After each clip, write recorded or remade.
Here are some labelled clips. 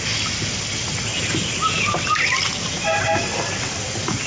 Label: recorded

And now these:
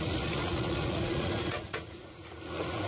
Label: remade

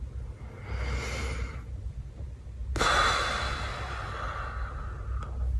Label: recorded